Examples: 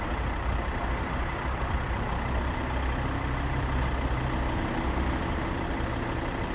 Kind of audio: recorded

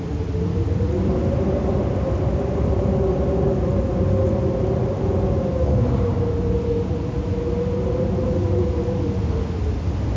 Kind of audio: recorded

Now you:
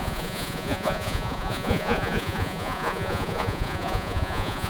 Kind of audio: remade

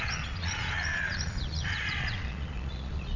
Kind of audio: remade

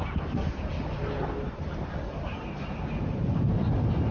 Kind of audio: recorded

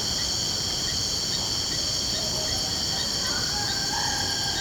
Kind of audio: recorded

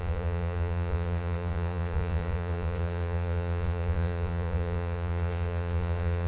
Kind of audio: remade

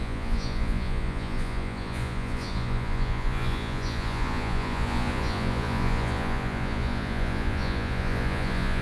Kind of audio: remade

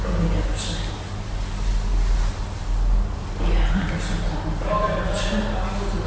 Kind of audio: recorded